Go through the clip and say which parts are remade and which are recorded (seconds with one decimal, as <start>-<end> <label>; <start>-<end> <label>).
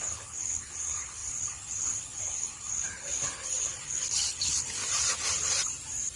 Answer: 0.0-4.8 remade; 4.8-6.2 recorded